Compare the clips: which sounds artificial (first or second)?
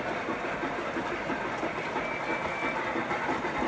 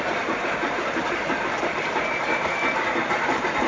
second